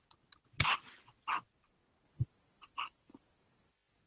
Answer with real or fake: real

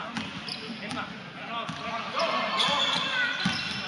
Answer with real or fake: real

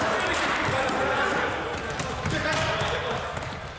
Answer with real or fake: fake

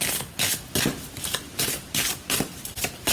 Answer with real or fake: real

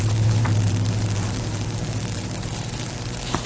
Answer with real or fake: fake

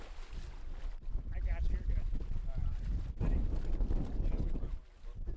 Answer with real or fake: real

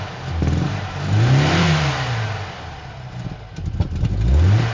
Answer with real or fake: real